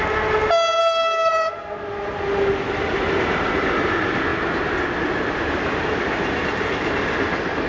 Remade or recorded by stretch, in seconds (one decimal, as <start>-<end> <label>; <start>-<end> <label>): 0.0-0.8 recorded; 0.8-1.3 remade; 1.3-7.7 recorded